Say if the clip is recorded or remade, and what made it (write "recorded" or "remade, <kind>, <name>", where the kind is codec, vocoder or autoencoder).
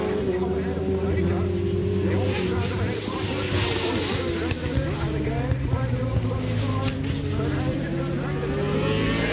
recorded